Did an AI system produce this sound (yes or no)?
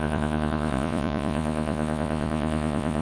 yes